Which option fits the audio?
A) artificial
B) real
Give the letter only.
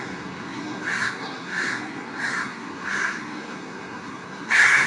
A